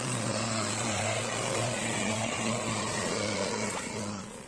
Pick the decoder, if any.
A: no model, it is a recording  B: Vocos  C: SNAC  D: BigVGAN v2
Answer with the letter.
B